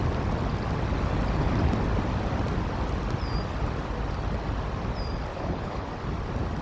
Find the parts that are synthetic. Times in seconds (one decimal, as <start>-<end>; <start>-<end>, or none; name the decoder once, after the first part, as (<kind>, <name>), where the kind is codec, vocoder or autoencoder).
5.3-5.9 (codec, HILCodec)